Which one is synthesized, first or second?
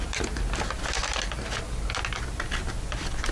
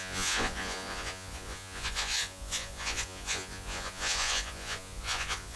second